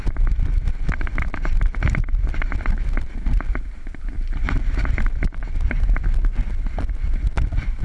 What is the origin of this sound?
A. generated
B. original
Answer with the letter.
B